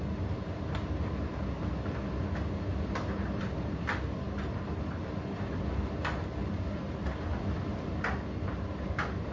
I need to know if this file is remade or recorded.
recorded